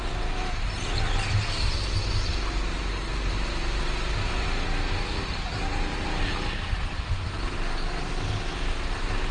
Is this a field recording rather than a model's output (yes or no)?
yes